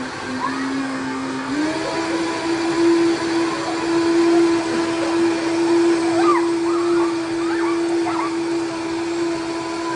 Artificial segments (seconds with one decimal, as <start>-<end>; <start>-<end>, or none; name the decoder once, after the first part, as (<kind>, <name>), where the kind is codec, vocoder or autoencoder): 0.8-1.5 (codec, DAC)